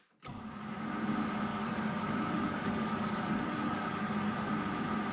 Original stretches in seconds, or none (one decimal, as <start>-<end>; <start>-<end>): 0.0-1.5; 4.6-5.1